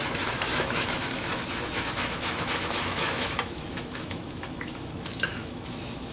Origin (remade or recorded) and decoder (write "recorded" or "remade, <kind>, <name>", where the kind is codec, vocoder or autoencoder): remade, autoencoder, DAC-VAE